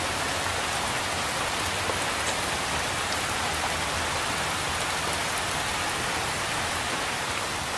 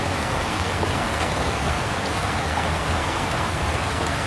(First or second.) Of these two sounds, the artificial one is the second